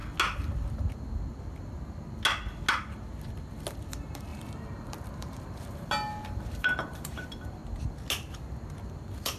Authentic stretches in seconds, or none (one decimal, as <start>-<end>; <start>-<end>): 0.0-3.9; 7.6-9.4